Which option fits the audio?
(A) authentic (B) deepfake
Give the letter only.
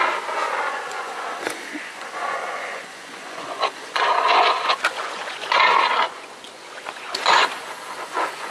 B